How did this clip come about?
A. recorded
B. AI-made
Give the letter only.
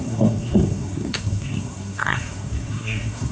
B